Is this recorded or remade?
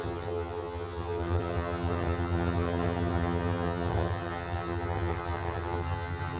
remade